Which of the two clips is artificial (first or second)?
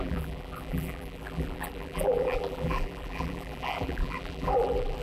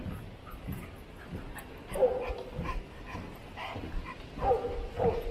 first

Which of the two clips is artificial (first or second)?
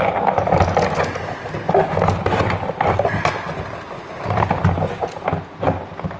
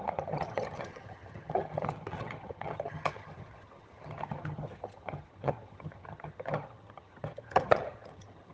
second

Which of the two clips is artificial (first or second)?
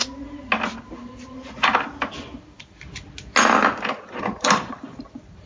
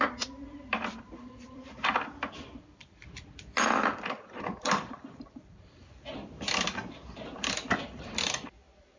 second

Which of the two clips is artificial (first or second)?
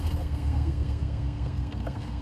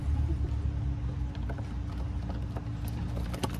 first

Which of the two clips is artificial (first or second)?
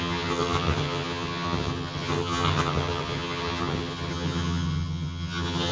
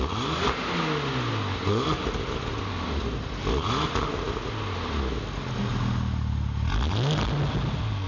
first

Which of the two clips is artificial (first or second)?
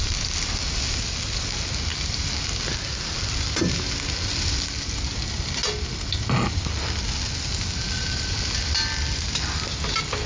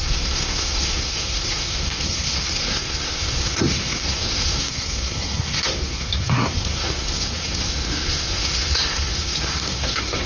second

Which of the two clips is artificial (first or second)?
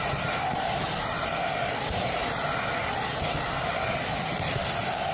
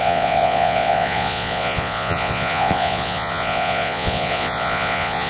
second